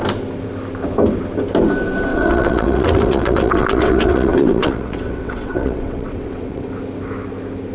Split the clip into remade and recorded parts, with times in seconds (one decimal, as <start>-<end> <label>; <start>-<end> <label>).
0.0-2.1 recorded; 2.1-6.7 remade; 6.7-7.7 recorded